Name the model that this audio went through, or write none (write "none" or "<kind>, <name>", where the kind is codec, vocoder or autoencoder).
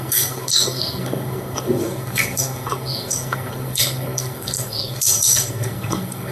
codec, SNAC